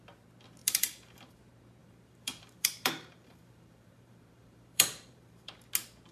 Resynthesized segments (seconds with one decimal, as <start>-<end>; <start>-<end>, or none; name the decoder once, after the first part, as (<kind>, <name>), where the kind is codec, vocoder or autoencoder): 0.6-1.4 (vocoder, BigVGAN v2); 1.8-5.5